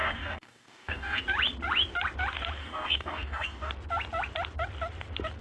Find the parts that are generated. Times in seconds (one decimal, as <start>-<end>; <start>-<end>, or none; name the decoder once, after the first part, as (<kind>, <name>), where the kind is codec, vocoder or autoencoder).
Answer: 0.0-1.2 (codec, DAC); 2.6-3.7